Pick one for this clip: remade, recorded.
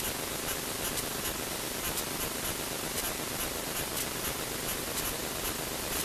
recorded